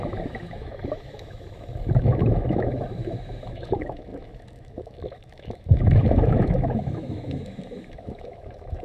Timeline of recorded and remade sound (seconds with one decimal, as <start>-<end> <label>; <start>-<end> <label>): 0.0-8.8 remade